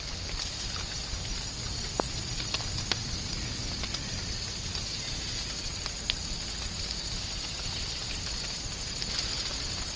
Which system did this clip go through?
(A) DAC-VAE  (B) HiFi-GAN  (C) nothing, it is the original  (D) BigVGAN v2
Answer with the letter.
C